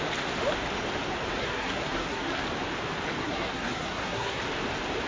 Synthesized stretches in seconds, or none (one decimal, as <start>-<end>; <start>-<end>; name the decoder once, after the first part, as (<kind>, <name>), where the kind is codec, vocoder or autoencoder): 1.4-2.4 (codec, SNAC); 3.2-4.4